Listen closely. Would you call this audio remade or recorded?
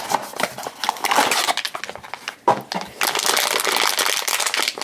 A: recorded